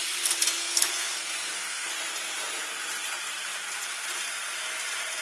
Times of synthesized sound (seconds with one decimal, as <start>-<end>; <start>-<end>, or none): 0.6-1.9